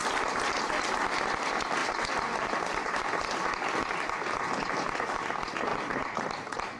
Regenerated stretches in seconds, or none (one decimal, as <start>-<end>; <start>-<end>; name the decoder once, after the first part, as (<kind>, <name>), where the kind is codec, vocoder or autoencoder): 1.8-3.1 (vocoder, BigVGAN v2); 5.7-6.8